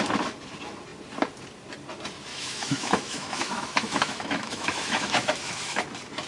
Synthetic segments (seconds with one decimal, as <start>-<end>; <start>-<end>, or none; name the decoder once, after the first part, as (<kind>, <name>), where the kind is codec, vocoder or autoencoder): 2.3-5.8 (autoencoder, DAC-VAE)